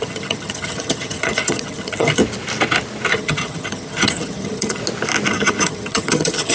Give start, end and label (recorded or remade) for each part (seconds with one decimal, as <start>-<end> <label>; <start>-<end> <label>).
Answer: 0.0-2.2 remade; 2.2-3.1 recorded; 3.1-4.8 remade; 4.8-5.3 recorded; 5.3-6.5 remade

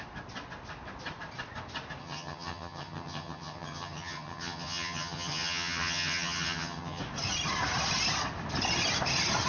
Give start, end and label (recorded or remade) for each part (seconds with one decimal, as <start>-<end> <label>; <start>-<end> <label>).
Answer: 0.0-2.0 recorded; 2.0-7.0 remade; 7.0-9.5 recorded

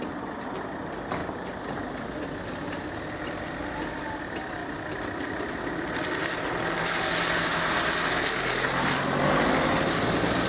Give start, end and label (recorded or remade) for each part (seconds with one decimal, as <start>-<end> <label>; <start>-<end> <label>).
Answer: 0.0-10.5 recorded

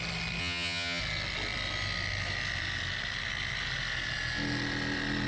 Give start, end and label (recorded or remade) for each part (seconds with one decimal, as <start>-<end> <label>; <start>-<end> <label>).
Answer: 0.0-0.4 recorded; 0.4-1.0 remade; 1.0-5.3 recorded

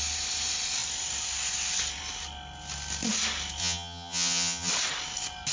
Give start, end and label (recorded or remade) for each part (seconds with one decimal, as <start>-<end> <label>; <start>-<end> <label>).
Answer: 0.0-3.6 recorded; 3.6-4.7 remade; 4.7-5.5 recorded

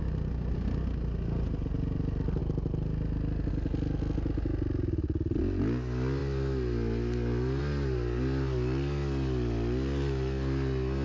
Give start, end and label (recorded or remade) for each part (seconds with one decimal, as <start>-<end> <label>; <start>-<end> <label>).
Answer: 0.0-11.0 recorded

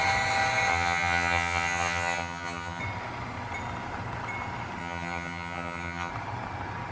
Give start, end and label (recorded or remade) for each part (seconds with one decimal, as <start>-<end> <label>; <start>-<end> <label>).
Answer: 0.0-0.7 recorded; 0.7-2.8 remade; 2.8-4.8 recorded; 4.8-6.1 remade; 6.1-6.9 recorded